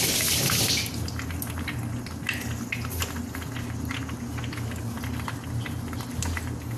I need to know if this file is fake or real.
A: real